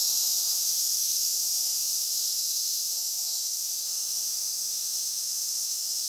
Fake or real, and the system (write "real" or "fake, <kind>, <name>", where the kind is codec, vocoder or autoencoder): fake, autoencoder, DAC-VAE